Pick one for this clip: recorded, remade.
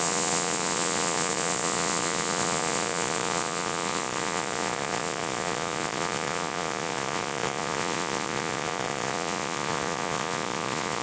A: remade